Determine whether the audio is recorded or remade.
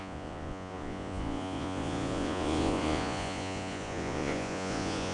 remade